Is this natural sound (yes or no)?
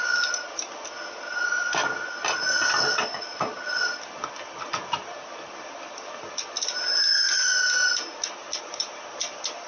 yes